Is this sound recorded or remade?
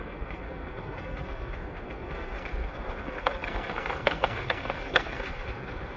remade